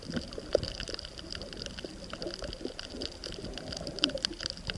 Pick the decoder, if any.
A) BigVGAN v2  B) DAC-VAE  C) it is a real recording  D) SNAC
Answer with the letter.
C